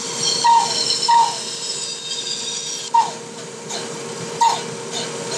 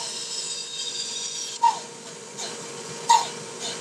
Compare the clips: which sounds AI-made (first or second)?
second